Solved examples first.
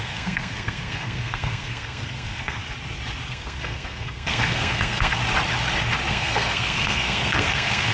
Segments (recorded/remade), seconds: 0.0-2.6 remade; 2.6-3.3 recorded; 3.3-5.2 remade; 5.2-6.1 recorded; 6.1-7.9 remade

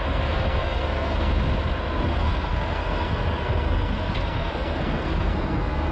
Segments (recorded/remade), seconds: 0.0-1.3 remade; 1.3-2.1 recorded; 2.1-5.9 remade

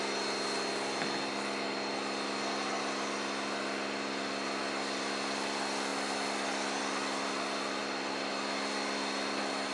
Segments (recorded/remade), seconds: 0.0-9.7 recorded

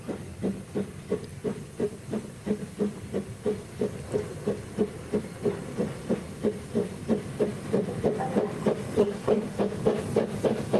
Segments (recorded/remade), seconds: 0.0-9.0 recorded; 9.0-9.6 remade; 9.6-10.8 recorded

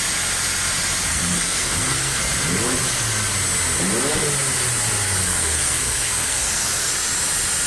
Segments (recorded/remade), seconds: 0.0-1.1 recorded; 1.1-2.2 remade; 2.2-5.2 recorded; 5.2-6.9 remade; 6.9-7.7 recorded

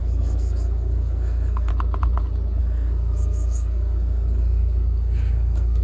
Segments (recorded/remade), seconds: 0.0-1.7 remade; 1.7-2.6 recorded; 2.6-5.8 remade

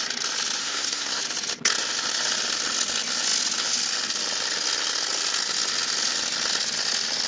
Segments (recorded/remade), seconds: 0.0-0.6 recorded; 0.6-1.2 remade; 1.2-7.3 recorded

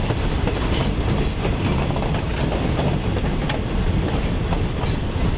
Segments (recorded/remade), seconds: 0.0-5.4 recorded